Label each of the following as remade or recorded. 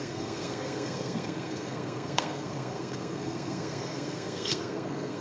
remade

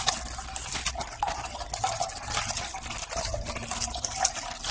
recorded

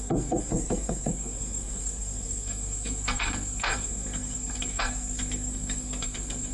remade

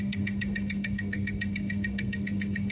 remade